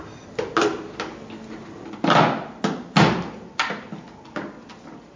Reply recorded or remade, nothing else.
recorded